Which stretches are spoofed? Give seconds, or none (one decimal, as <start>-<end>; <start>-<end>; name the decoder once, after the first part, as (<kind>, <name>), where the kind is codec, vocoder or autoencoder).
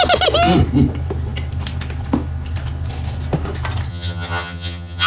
3.9-5.1 (vocoder, HiFi-GAN)